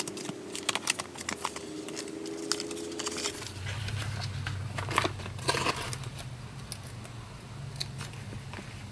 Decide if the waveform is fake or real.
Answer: real